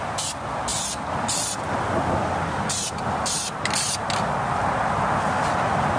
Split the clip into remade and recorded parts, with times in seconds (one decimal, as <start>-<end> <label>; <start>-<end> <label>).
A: 0.0-6.0 recorded